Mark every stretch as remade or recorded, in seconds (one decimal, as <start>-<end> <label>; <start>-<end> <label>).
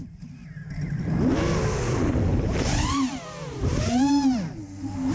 0.0-2.3 recorded; 2.3-3.8 remade; 3.8-5.1 recorded